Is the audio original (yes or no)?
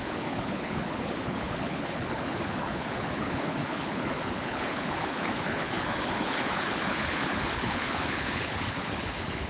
no